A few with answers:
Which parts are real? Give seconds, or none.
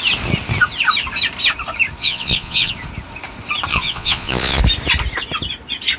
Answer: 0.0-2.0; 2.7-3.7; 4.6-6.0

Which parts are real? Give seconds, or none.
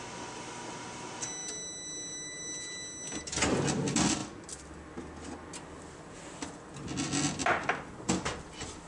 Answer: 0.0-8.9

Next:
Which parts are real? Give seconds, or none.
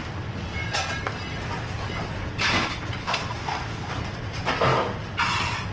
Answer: 0.0-3.0; 3.9-5.7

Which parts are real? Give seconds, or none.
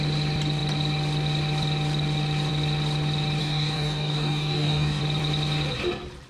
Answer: 0.0-3.4; 5.0-6.3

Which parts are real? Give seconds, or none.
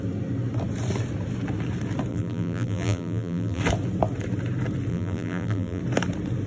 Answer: 0.0-2.1; 3.6-4.9; 5.8-6.5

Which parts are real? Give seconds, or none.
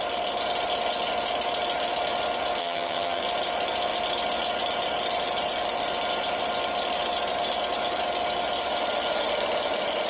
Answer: 0.0-2.6; 3.2-10.1